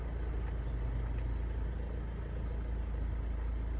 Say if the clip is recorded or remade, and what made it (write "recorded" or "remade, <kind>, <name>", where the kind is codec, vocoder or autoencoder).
recorded